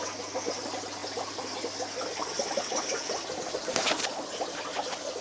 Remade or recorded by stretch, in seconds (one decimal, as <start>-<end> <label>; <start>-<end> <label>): 0.0-5.2 recorded